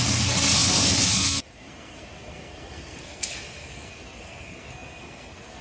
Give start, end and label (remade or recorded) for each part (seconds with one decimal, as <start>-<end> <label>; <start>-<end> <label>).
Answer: 0.0-5.6 remade